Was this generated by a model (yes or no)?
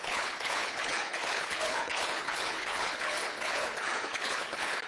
yes